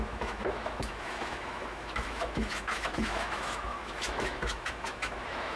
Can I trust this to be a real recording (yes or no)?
no